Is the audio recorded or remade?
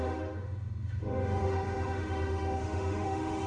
remade